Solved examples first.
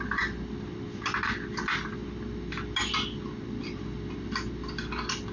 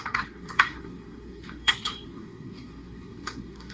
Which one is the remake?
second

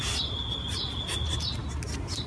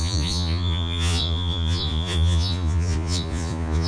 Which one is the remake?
second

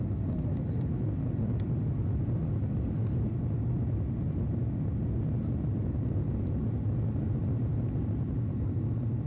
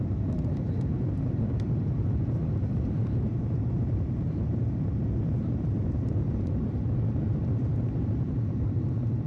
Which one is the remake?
second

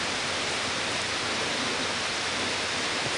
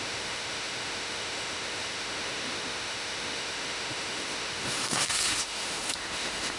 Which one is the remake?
second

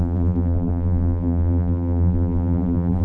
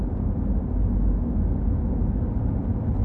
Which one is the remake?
first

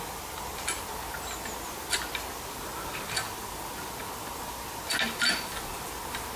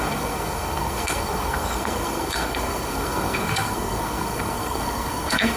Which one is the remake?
second